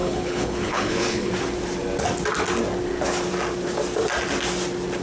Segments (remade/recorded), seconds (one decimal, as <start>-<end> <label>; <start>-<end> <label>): 0.0-1.3 remade; 1.3-5.0 recorded